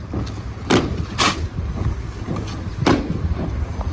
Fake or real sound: real